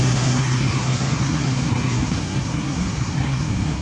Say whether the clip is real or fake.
fake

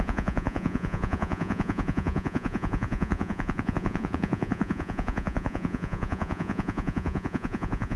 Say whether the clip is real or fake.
fake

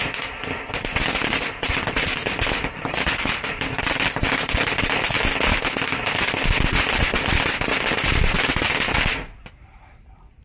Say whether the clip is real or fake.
real